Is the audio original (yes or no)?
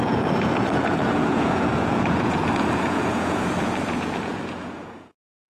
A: no